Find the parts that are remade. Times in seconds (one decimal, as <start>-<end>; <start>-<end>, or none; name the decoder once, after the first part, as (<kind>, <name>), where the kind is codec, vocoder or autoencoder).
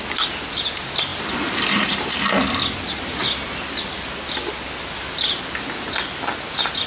none